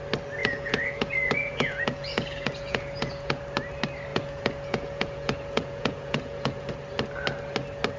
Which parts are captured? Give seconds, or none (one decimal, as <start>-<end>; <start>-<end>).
0.0-0.4; 3.4-4.1; 6.7-8.0